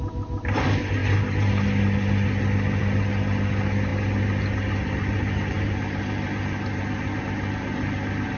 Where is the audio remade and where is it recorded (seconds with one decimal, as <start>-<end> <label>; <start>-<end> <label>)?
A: 0.0-8.4 recorded